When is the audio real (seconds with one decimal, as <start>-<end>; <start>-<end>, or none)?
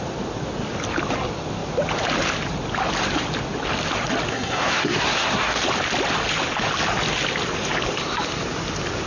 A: 0.0-4.3; 5.6-9.1